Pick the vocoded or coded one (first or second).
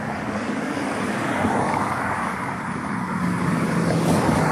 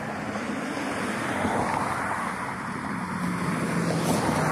first